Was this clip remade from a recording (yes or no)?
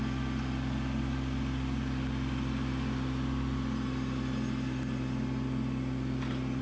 no